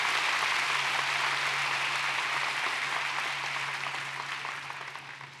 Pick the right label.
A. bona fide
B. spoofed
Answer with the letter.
A